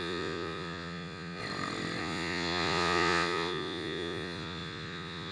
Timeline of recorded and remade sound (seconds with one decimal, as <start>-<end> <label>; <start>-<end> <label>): 0.0-1.4 remade; 1.4-2.0 recorded; 2.0-5.3 remade